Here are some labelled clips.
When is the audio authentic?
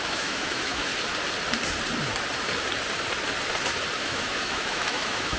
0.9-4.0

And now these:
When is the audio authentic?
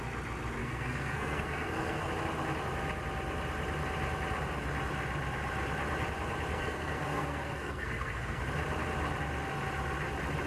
0.0-0.6; 2.1-6.5; 8.4-10.5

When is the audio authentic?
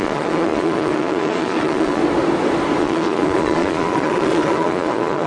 2.0-2.8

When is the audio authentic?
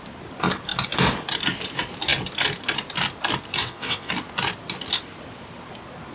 0.0-3.6; 4.1-6.1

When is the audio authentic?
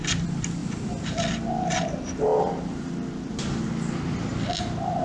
0.0-5.0